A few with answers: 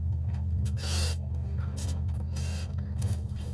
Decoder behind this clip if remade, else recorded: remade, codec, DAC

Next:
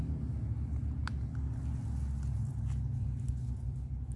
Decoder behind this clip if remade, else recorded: recorded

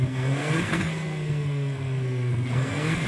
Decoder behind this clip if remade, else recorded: remade, codec, SNAC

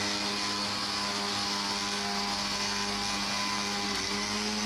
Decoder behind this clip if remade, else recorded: recorded